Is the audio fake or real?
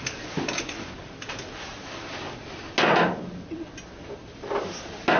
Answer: real